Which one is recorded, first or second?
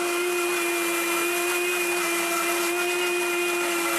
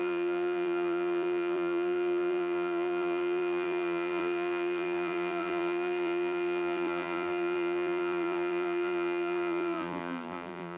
first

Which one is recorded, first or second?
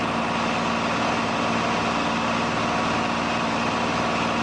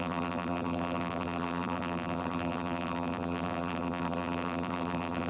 first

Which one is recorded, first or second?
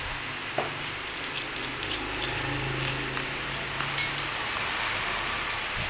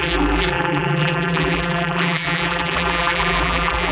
first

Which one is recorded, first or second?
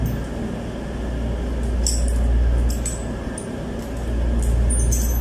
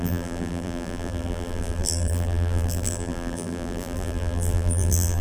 first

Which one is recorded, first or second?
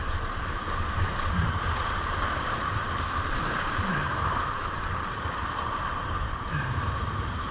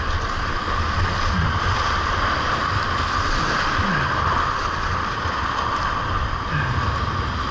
second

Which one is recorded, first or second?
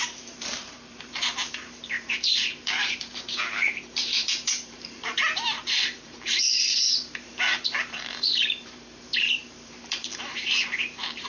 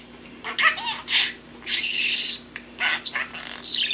second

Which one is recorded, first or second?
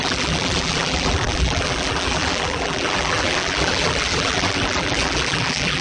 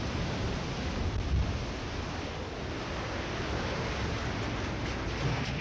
second